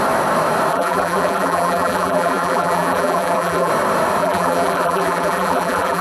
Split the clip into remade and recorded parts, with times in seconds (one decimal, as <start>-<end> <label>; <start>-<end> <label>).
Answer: 0.0-0.7 recorded; 0.7-3.7 remade; 3.7-4.2 recorded; 4.2-6.0 remade